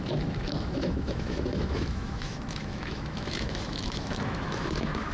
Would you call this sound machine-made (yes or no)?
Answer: yes